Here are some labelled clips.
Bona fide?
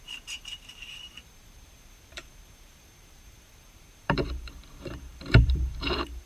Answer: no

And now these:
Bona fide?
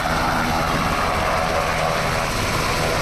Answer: yes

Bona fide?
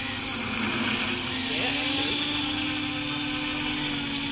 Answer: yes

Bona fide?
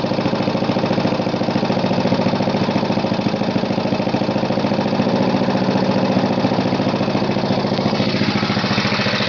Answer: yes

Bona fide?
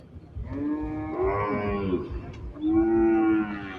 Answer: yes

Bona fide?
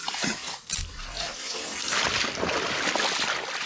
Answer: yes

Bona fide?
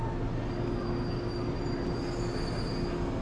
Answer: yes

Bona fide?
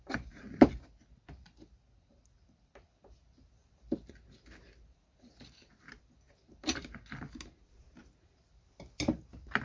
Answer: yes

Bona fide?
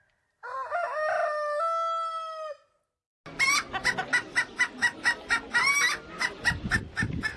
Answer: yes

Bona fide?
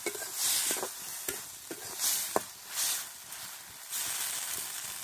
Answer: yes